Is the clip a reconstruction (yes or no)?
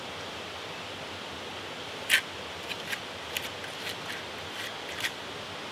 no